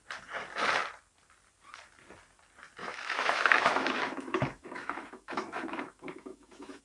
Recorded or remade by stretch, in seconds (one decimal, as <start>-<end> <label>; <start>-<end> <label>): 0.0-2.8 recorded; 2.8-6.8 remade